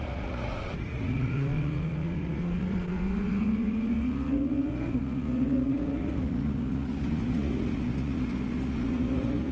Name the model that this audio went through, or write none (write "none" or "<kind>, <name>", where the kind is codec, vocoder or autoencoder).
vocoder, Vocos